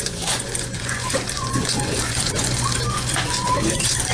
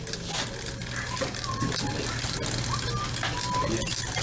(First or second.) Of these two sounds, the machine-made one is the first